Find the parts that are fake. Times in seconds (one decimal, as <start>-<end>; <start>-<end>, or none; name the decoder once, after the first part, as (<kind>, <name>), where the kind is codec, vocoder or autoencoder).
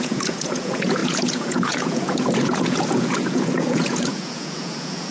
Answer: 0.0-5.1 (vocoder, Vocos)